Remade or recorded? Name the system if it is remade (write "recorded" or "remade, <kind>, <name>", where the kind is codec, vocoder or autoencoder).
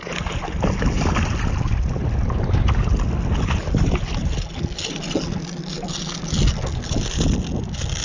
recorded